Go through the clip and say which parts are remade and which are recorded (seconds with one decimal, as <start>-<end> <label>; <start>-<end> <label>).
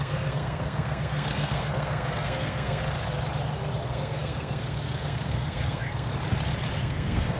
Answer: 0.0-2.8 remade; 2.8-3.8 recorded; 3.8-6.1 remade; 6.1-6.8 recorded; 6.8-7.4 remade